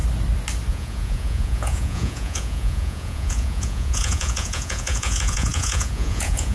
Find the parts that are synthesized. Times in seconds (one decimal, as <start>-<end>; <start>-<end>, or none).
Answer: 0.7-6.5